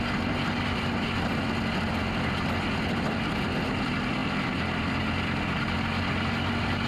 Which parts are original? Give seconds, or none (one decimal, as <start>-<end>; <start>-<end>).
0.0-6.9